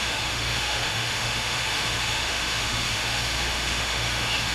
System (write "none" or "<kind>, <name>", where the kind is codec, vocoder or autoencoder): autoencoder, DAC-VAE